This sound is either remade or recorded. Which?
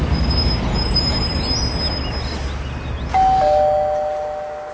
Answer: recorded